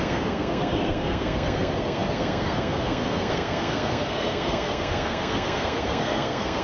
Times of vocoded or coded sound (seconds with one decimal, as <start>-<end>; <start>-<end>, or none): 0.0-6.6